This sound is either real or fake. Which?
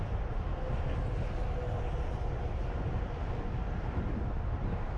real